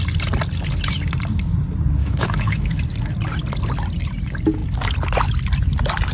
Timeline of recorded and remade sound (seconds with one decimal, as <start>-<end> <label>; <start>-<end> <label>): 0.0-2.0 recorded; 2.0-2.8 remade; 2.8-6.1 recorded